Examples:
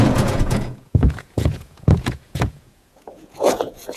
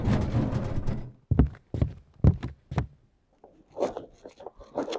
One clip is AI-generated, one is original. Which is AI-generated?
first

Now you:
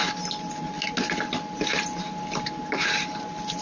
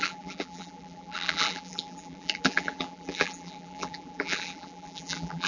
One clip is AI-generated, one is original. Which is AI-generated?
second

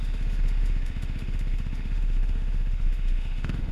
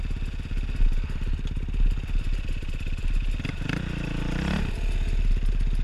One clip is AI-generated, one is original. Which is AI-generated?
first